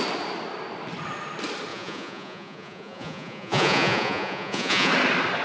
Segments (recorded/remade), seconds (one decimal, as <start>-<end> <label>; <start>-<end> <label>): 0.0-1.7 recorded; 1.7-4.9 remade; 4.9-5.4 recorded